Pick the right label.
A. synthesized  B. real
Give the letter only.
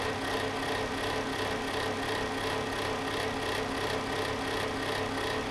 B